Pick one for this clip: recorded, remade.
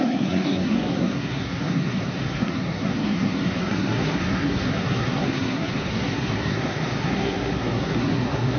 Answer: remade